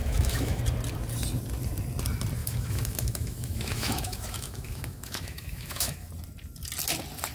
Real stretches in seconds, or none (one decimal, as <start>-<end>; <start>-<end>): 0.6-2.4; 6.1-7.3